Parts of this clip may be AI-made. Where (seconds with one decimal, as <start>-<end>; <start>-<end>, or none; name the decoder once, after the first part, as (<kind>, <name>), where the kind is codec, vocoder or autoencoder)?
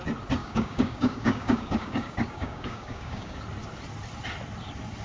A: 0.4-3.4 (codec, DAC)